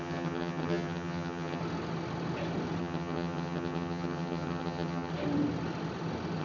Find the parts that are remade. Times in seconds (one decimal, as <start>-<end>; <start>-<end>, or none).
0.0-1.6; 2.8-5.1